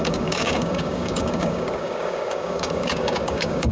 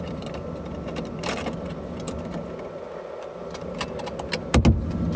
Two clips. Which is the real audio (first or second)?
second